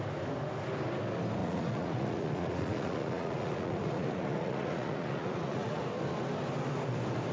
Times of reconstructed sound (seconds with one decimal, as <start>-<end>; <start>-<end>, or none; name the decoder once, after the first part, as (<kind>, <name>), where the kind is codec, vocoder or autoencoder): 1.4-5.8 (vocoder, Vocos)